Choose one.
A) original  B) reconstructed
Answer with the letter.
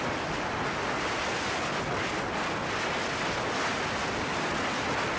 A